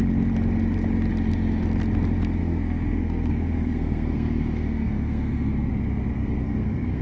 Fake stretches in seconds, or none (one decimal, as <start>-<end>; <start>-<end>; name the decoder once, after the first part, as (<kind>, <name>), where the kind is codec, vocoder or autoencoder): 2.4-5.7 (codec, SNAC); 6.2-7.0